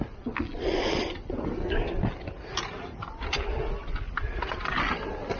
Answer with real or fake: real